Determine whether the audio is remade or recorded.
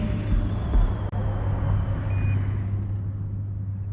recorded